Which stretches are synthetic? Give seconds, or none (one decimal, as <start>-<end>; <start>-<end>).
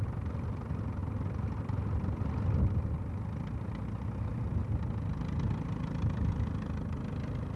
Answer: none